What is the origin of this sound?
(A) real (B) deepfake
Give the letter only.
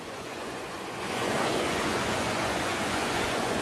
B